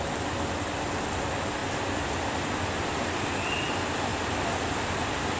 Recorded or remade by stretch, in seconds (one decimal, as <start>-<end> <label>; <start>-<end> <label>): 0.0-5.4 recorded